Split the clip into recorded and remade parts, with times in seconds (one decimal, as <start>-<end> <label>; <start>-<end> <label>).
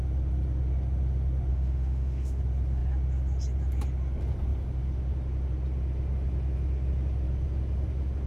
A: 0.0-1.5 recorded; 1.5-2.4 remade; 2.4-8.3 recorded